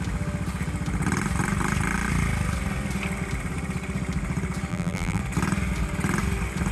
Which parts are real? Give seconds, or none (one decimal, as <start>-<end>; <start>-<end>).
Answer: 0.0-4.7; 5.2-6.7